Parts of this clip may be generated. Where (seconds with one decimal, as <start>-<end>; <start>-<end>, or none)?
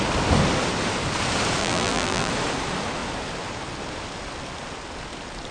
1.6-2.3